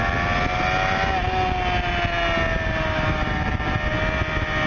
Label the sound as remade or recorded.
recorded